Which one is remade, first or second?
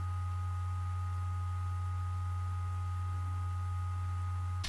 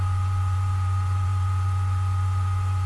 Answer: second